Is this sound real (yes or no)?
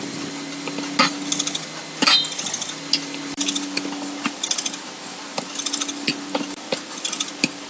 yes